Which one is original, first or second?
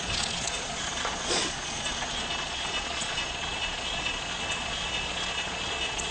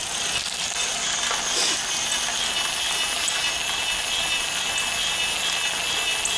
second